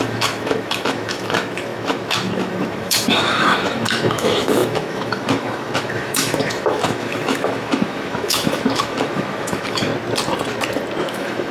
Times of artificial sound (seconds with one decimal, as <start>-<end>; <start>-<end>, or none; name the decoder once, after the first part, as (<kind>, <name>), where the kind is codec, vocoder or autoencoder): 0.0-9.9 (autoencoder, DAC-VAE); 11.0-11.5